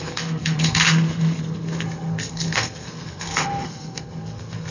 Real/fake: fake